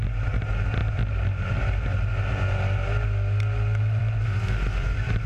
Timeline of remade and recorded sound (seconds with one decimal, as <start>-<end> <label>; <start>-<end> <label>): 0.0-5.3 recorded